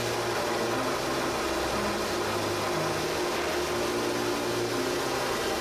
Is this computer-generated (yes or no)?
no